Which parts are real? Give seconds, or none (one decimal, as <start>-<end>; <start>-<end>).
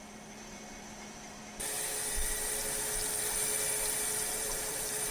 1.4-4.2